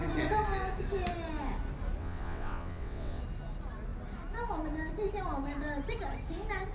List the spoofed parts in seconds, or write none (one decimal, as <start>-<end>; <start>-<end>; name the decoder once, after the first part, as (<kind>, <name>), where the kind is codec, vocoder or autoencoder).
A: 2.0-3.2 (vocoder, WaveNeXt)